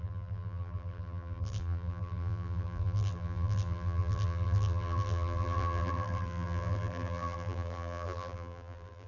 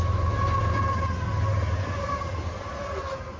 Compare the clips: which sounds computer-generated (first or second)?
first